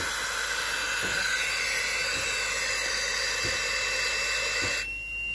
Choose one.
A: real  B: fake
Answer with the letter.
A